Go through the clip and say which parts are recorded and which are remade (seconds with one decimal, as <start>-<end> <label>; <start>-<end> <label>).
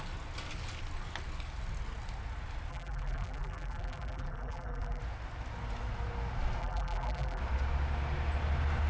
0.0-2.7 recorded; 2.7-5.0 remade; 5.0-6.6 recorded; 6.6-7.4 remade; 7.4-8.9 recorded